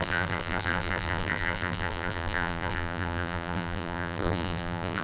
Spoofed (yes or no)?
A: yes